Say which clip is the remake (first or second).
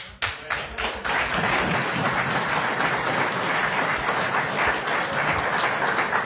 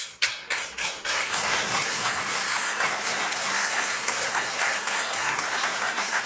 second